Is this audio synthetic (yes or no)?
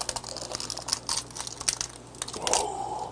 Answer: no